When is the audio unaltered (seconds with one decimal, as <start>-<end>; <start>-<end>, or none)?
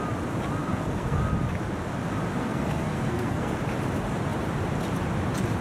0.0-0.6; 1.2-2.4; 3.6-5.6